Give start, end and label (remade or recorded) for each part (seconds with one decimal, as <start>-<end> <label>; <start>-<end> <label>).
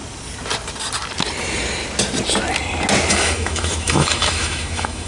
0.0-3.1 recorded; 3.1-5.1 remade